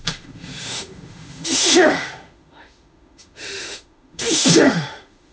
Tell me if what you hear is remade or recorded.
remade